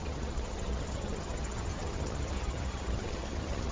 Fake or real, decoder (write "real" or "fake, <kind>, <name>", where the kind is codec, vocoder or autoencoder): fake, vocoder, HiFi-GAN